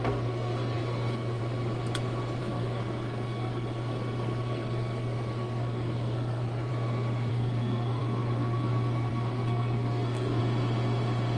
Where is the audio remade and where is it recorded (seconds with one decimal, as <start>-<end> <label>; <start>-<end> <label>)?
0.0-1.4 remade; 1.4-2.4 recorded; 2.4-6.7 remade; 6.7-7.3 recorded; 7.3-10.4 remade; 10.4-11.4 recorded

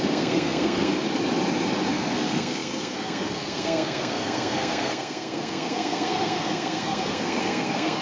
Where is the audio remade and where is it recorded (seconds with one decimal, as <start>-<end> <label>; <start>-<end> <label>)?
0.0-0.9 remade; 0.9-1.9 recorded; 1.9-8.0 remade

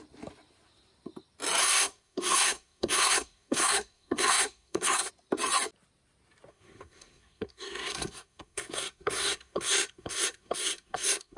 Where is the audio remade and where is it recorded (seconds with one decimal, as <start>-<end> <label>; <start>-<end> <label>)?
0.0-1.6 recorded; 1.6-5.1 remade; 5.1-6.5 recorded; 6.5-11.4 remade

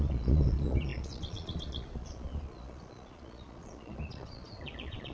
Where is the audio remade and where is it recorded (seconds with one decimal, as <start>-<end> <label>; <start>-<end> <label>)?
0.0-5.1 remade

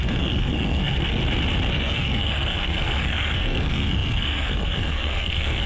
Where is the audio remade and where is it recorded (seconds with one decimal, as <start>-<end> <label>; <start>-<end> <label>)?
0.0-1.2 remade; 1.2-1.7 recorded; 1.7-5.7 remade

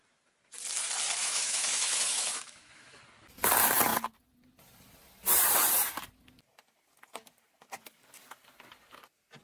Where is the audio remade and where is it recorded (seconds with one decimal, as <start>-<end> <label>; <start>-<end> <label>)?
0.0-1.2 recorded; 1.2-3.0 remade; 3.0-9.4 recorded